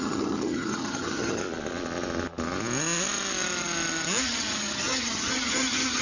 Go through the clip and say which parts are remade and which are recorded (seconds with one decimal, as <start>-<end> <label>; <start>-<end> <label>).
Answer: 0.0-1.4 remade; 1.4-4.2 recorded; 4.2-6.0 remade